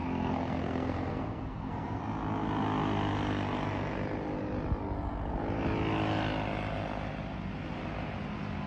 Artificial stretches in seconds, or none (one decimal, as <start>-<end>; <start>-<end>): 0.0-2.0